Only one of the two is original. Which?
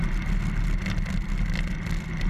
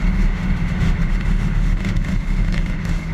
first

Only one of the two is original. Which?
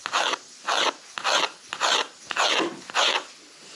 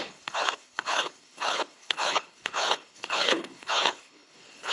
first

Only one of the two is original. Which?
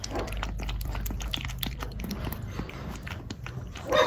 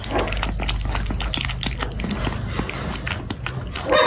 second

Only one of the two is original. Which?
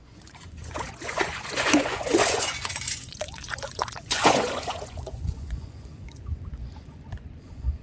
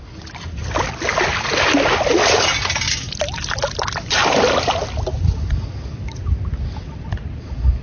second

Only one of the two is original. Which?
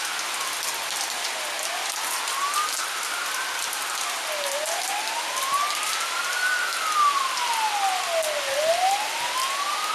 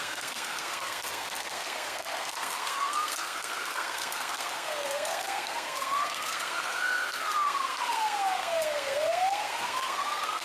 first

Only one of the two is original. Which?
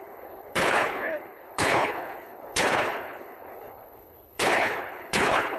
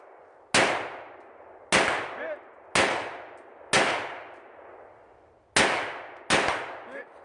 second